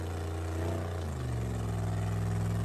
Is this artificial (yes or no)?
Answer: no